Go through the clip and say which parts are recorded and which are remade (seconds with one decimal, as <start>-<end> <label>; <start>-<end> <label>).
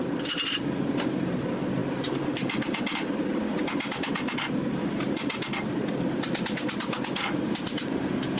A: 0.0-1.8 recorded; 1.8-3.6 remade; 3.6-8.4 recorded